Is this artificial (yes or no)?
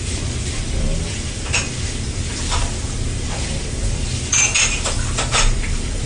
yes